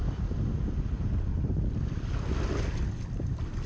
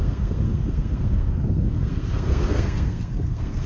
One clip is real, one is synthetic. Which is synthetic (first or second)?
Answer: second